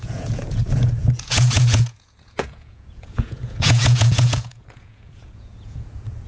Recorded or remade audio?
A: remade